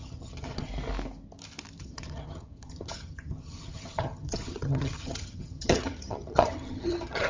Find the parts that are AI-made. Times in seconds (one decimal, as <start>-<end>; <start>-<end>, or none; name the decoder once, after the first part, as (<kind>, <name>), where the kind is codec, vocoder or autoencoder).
0.0-0.7 (vocoder, HiFi-GAN); 1.8-7.3